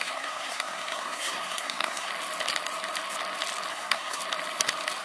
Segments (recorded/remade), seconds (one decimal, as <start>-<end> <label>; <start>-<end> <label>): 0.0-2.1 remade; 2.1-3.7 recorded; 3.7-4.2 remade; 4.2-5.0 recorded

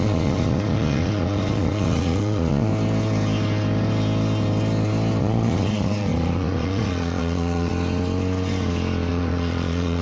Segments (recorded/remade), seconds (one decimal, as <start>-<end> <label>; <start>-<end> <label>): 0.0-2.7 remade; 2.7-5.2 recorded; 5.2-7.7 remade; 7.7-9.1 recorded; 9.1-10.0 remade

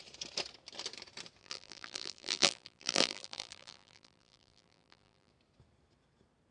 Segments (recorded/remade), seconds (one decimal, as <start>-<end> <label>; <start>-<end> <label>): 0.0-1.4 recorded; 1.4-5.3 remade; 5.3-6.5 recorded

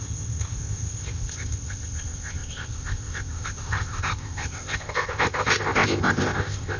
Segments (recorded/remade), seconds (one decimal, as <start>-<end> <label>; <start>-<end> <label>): 0.0-6.8 remade

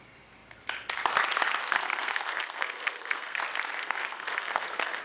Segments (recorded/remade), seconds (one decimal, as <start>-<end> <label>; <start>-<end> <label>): 0.0-1.6 recorded; 1.6-3.4 remade; 3.4-3.8 recorded; 3.8-5.0 remade